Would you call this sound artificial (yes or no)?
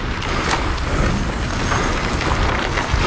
no